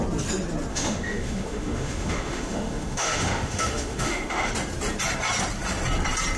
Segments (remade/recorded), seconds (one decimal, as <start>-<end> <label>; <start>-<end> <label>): 0.0-0.7 recorded; 0.7-4.5 remade; 4.5-6.4 recorded